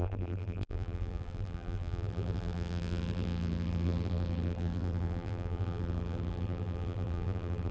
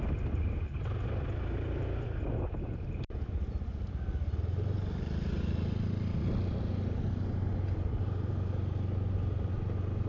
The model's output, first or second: first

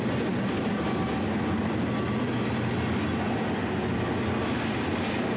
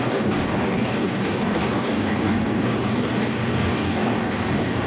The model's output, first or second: second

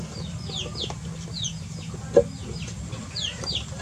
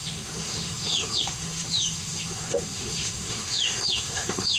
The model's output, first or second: second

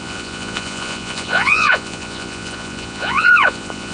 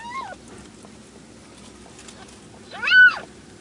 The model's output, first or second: first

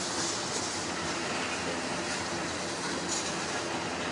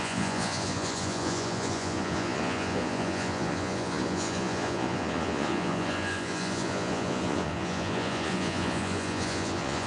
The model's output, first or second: second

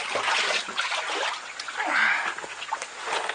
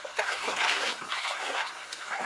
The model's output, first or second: second